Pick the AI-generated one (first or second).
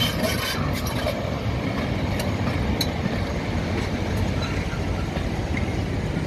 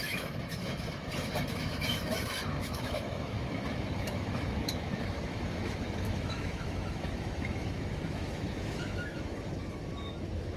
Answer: second